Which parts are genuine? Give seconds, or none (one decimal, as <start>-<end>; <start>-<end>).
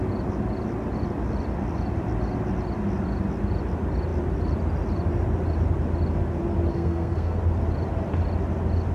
0.0-6.7; 7.4-8.9